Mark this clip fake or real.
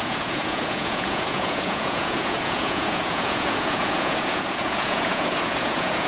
fake